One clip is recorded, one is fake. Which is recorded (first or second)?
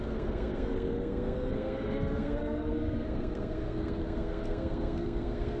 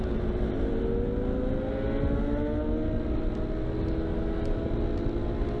second